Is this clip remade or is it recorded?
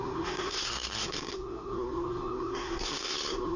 remade